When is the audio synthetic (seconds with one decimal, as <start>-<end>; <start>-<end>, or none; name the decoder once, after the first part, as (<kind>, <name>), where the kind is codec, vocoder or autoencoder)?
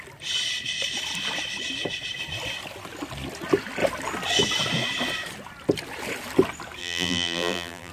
6.8-7.9 (vocoder, BigVGAN v2)